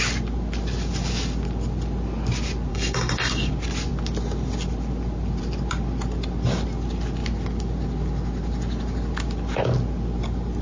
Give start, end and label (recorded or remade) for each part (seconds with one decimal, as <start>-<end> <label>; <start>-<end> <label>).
0.0-2.7 recorded; 2.7-3.5 remade; 3.5-10.6 recorded